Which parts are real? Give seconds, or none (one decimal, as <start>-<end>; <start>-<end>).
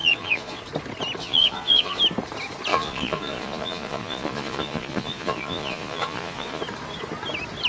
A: 0.6-1.2; 2.0-2.7; 6.6-7.7